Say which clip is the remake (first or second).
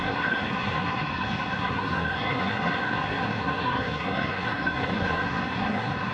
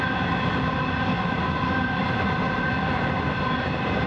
first